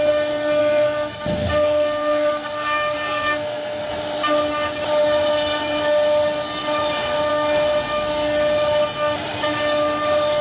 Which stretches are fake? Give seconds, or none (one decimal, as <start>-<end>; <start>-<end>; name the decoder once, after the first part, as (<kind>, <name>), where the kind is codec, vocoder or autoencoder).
0.6-3.8 (codec, SNAC)